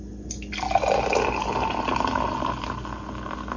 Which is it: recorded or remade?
recorded